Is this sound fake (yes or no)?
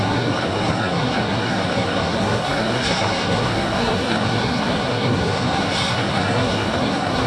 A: yes